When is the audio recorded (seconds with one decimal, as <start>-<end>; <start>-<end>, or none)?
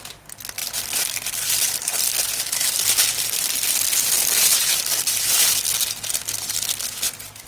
0.0-7.5